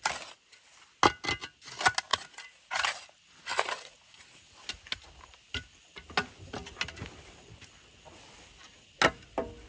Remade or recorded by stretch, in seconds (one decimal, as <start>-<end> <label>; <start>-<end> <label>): 0.0-2.1 recorded; 2.1-2.8 remade; 2.8-3.5 recorded; 3.5-4.5 remade; 4.5-9.7 recorded